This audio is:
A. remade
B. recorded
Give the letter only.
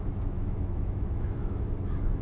A